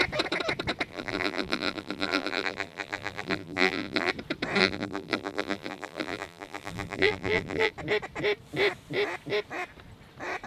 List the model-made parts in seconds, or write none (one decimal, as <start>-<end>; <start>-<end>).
0.9-4.1; 4.6-7.7